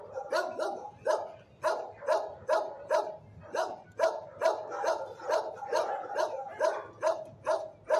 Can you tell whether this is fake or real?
real